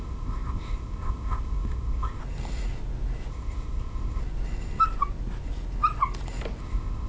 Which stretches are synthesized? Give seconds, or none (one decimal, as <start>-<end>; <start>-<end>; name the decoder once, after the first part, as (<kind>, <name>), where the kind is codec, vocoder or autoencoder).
0.0-2.2 (codec, ZipCodec); 3.3-4.2; 6.6-7.1